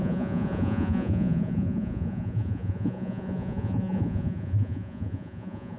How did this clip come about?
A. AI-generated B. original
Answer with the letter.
A